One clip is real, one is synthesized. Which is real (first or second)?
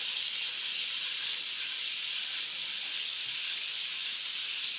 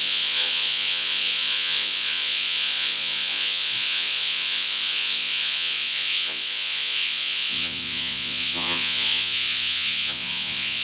first